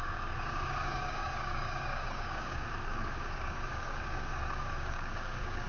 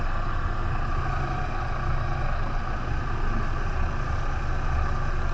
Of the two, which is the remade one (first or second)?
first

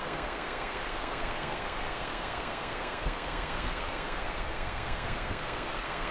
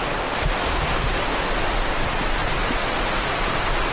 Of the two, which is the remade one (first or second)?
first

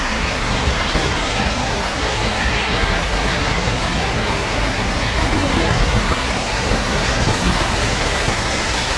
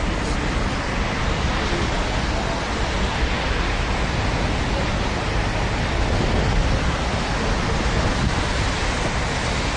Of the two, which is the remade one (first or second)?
first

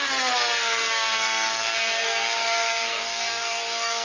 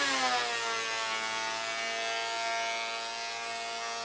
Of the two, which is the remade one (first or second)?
first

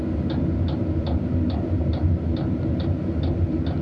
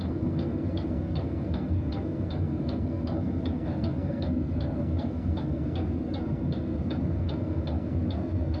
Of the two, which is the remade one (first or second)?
second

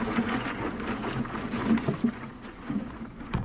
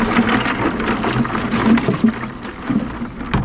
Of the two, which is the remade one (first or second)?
first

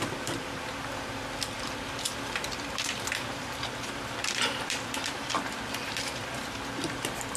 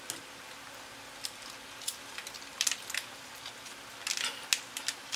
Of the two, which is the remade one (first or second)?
first